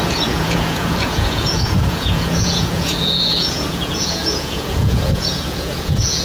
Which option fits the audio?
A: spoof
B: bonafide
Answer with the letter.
A